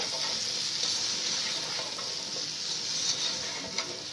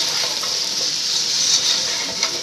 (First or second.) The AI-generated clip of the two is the second